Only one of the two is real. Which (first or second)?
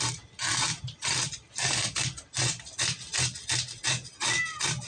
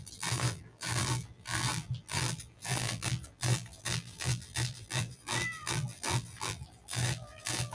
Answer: first